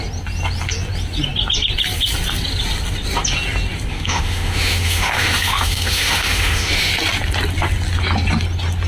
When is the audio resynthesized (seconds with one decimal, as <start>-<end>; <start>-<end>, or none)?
3.9-6.9